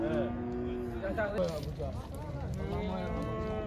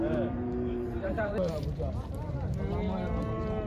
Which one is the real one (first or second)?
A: first